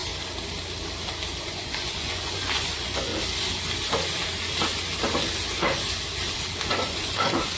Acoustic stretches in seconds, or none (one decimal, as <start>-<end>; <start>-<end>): 0.0-1.4; 3.1-6.7